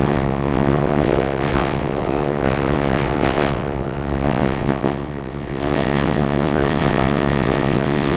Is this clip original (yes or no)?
no